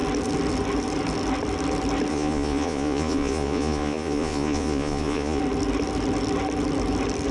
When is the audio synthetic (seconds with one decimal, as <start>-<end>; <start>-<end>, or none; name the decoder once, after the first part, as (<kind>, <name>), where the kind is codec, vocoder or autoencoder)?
2.1-5.4 (vocoder, Vocos)